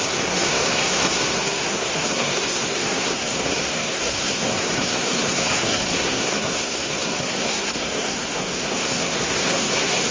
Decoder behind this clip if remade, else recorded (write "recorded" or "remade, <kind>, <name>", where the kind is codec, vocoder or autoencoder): remade, codec, SNAC